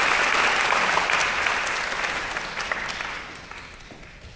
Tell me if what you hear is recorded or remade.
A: recorded